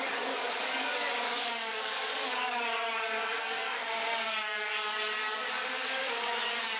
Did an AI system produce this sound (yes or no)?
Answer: yes